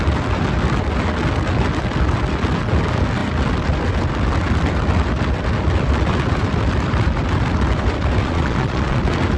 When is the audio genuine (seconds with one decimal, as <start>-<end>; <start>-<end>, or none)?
0.0-8.2; 9.0-9.4